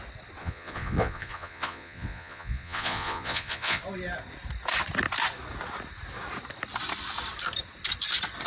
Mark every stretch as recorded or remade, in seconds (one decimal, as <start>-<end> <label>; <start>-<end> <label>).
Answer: 0.0-0.4 recorded; 0.4-3.8 remade; 3.8-8.5 recorded